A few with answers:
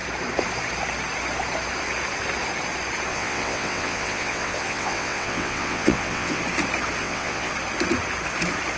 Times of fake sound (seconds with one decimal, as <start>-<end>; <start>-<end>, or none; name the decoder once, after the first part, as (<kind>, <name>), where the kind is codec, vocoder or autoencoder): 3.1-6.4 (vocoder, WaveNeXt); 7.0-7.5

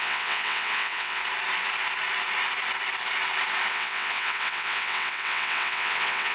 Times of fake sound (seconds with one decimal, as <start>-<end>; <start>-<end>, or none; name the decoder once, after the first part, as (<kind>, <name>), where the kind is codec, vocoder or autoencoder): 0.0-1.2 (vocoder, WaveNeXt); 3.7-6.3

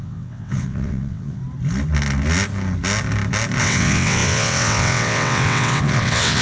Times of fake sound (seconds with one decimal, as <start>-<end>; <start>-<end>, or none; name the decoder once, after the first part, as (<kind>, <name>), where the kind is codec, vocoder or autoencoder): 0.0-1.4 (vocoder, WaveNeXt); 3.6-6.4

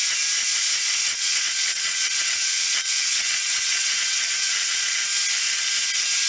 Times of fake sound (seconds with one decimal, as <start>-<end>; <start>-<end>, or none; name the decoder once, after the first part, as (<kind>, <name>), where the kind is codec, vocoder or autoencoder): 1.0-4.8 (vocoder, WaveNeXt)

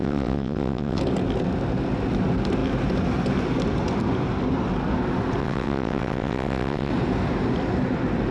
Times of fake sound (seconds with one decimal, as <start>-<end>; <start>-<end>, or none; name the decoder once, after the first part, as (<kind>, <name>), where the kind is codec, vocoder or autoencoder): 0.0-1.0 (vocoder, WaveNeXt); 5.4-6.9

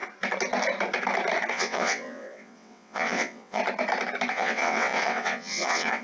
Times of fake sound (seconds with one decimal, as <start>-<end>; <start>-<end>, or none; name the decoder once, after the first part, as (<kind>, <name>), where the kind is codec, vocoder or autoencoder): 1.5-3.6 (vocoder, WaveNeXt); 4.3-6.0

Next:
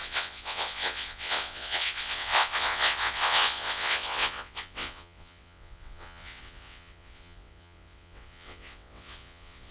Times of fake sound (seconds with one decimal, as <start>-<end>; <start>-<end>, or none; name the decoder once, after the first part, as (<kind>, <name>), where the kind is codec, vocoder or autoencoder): 0.0-9.7 (vocoder, WaveNeXt)

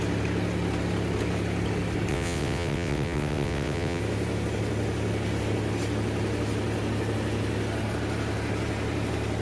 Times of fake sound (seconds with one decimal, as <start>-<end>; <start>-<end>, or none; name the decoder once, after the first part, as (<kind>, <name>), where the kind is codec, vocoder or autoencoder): 2.1-4.0 (vocoder, WaveNeXt)